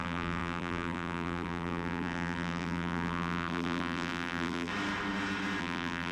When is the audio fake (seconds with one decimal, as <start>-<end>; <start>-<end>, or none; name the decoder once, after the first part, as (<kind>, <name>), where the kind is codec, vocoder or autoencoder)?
0.0-4.7 (vocoder, BigVGAN v2); 5.6-6.1